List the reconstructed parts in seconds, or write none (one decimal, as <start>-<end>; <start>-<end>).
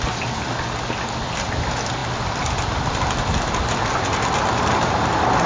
none